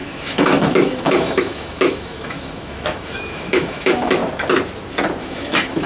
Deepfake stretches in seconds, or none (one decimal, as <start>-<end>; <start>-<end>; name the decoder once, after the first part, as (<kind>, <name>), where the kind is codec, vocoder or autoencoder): 0.0-4.2 (autoencoder, DAC-VAE); 5.2-5.9